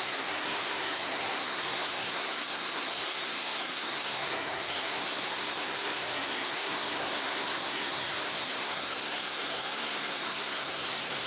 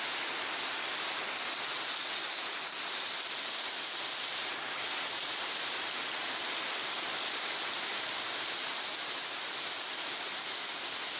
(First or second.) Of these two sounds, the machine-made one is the first